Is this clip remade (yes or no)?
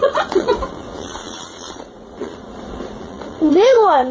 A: yes